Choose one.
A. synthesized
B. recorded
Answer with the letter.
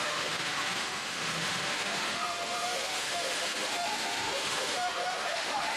A